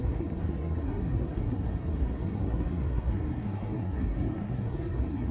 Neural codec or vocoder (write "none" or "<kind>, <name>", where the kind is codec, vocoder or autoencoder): codec, SNAC